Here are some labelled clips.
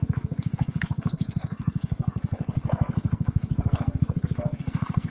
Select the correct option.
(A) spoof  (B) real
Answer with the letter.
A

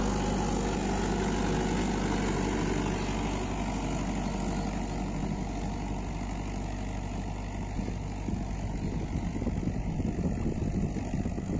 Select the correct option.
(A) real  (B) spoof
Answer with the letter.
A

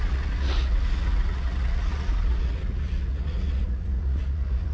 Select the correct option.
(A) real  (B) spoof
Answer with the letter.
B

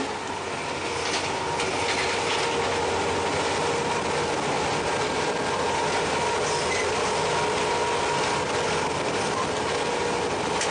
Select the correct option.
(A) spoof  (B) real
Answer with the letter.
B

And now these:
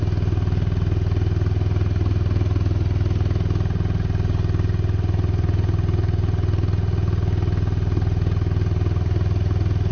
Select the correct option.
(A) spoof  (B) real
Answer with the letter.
B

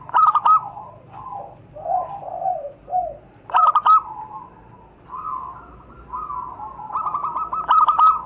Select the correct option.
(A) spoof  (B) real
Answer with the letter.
B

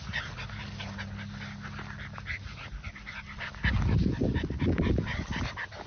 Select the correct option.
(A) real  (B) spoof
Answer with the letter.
A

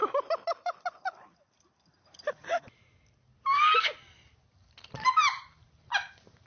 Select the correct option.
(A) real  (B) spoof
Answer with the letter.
A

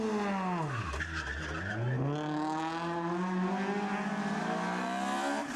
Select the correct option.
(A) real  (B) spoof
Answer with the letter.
A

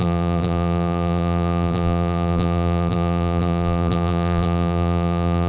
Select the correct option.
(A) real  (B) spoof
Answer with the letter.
B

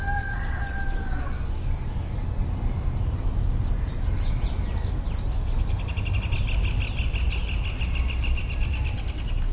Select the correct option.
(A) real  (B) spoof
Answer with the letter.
A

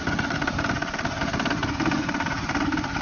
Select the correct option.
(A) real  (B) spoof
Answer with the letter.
A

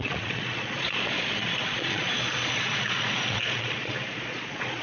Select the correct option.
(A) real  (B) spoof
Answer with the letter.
B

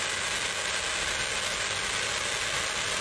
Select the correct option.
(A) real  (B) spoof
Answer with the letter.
A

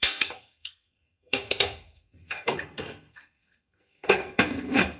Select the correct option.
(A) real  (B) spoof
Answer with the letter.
B